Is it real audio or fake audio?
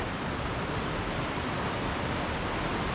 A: real